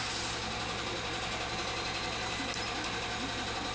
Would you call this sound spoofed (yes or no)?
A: no